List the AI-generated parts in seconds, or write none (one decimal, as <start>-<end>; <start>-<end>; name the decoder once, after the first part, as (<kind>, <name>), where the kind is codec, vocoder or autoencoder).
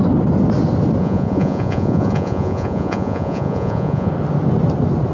1.0-4.1 (vocoder, Vocos)